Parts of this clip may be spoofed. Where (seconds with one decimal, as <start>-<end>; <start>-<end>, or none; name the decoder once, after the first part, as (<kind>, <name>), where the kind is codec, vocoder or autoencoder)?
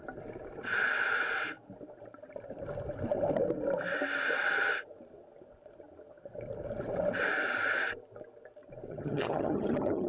8.9-10.1 (vocoder, HiFi-GAN)